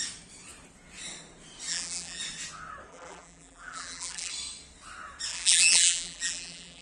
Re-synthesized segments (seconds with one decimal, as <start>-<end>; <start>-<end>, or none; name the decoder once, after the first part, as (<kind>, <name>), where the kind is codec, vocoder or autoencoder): 1.7-2.2 (vocoder, BigVGAN v2); 2.9-4.3; 5.3-6.8